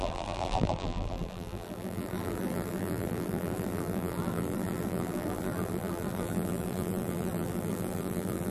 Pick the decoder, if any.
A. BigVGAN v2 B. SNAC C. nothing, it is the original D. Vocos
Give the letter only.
A